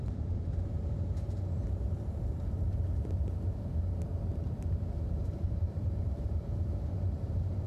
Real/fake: fake